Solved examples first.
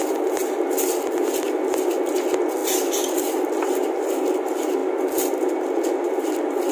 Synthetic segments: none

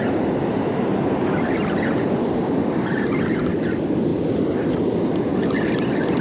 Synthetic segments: 0.9-2.6 (vocoder, BigVGAN v2); 4.1-4.7; 5.3-6.2

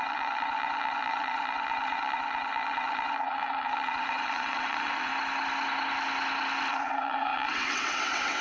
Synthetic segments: 0.0-5.1 (vocoder, WaveNeXt); 6.7-8.4

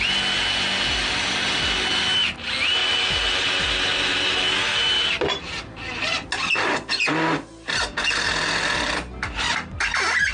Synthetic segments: none

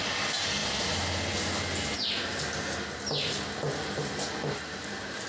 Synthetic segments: none

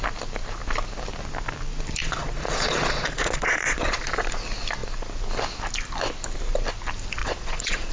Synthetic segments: 2.0-4.1 (vocoder, Vocos); 7.2-7.9

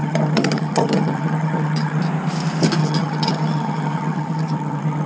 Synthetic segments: 0.0-2.0 (vocoder, HiFi-GAN); 2.8-5.1